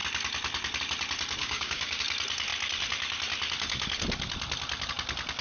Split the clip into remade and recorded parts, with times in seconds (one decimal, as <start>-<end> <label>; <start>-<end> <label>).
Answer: 0.0-1.4 recorded; 1.4-2.0 remade; 2.0-5.4 recorded